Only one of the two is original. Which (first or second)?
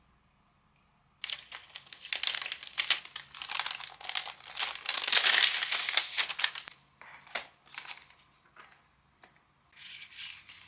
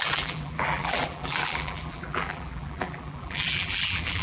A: first